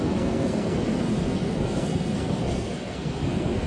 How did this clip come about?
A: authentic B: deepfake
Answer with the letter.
B